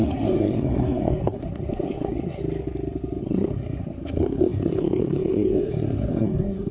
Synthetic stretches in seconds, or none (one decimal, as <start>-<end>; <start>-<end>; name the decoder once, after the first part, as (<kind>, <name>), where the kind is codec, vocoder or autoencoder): 0.0-2.4 (codec, SNAC); 3.2-6.7